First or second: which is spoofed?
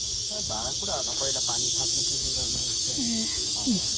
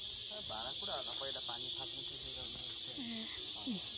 first